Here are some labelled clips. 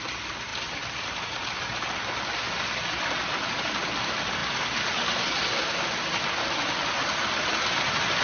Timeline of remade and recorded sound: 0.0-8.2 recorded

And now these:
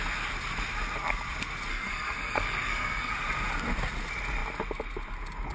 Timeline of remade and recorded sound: 0.0-1.7 recorded; 1.7-3.1 remade; 3.1-5.5 recorded

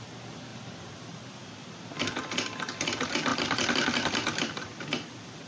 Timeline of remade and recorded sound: 0.0-0.5 recorded; 0.5-1.2 remade; 1.2-3.3 recorded; 3.3-5.5 remade

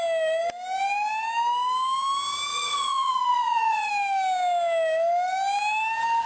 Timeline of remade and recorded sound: 0.0-2.5 recorded; 2.5-3.9 remade; 3.9-6.3 recorded

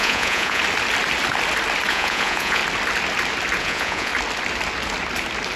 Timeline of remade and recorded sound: 0.0-0.6 remade; 0.6-1.9 recorded; 1.9-2.6 remade; 2.6-3.6 recorded; 3.6-4.1 remade; 4.1-5.6 recorded